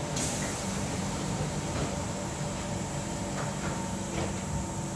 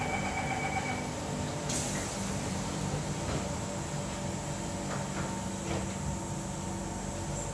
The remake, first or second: first